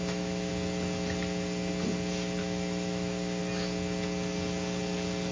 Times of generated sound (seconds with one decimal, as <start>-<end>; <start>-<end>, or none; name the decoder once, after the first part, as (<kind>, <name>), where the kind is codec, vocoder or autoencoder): 0.0-0.5 (autoencoder, DAC-VAE); 2.4-3.4